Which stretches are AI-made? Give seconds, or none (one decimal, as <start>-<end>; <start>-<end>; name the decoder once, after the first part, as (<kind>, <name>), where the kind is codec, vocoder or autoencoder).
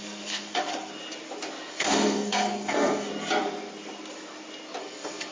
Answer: 0.0-0.9 (codec, SNAC); 1.7-3.1; 4.8-5.3